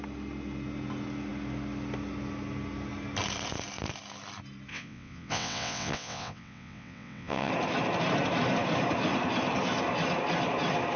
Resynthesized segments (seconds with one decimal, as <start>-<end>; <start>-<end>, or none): 4.7-7.5